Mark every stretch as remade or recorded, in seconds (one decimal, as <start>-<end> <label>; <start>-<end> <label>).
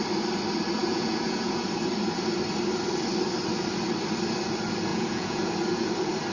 0.0-0.8 recorded; 0.8-1.7 remade; 1.7-4.9 recorded; 4.9-5.5 remade; 5.5-6.3 recorded